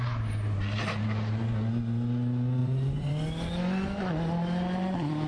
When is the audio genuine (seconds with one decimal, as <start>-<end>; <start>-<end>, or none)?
0.0-2.6; 3.1-5.3